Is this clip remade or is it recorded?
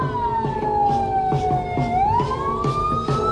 recorded